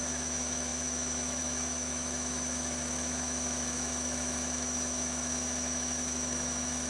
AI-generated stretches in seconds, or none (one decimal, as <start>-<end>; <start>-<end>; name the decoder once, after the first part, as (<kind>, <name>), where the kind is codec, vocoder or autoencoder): 0.0-6.9 (autoencoder, DAC-VAE)